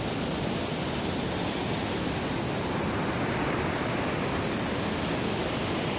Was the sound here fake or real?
real